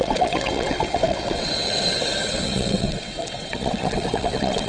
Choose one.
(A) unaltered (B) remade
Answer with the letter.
B